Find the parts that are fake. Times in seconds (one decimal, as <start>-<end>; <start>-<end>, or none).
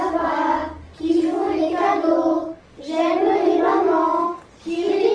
0.0-0.5; 1.1-5.1